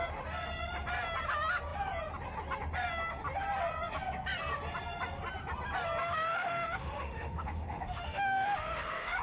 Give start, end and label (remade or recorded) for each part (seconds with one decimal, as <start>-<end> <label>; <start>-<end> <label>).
0.0-6.0 recorded; 6.0-9.2 remade